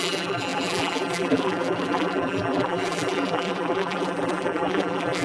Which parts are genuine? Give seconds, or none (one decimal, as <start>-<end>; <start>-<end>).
none